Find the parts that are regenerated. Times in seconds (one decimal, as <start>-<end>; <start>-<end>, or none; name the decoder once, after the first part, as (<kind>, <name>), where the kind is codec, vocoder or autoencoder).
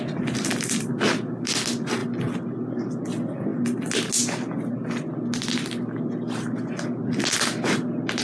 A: none